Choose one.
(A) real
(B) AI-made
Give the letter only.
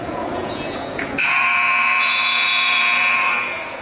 B